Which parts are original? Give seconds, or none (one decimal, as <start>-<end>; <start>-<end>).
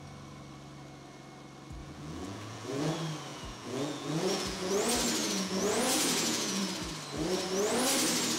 0.0-1.8; 2.9-3.3; 4.7-5.2; 6.6-8.4